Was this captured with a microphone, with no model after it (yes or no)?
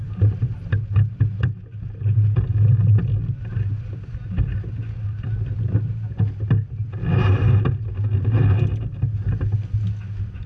yes